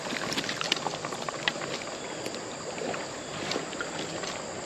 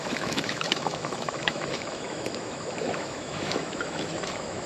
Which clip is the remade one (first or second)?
second